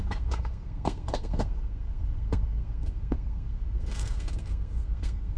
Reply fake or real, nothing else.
fake